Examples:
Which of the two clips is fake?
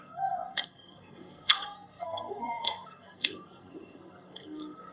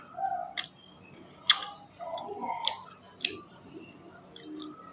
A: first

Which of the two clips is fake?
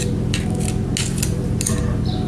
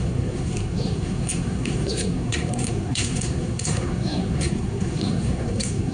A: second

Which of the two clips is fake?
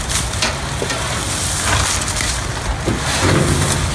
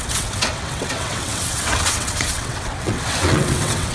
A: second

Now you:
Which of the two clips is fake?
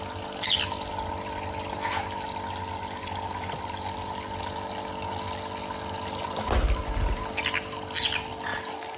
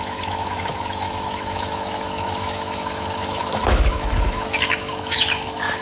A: second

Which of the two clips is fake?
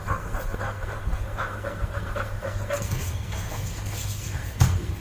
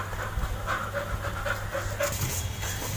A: first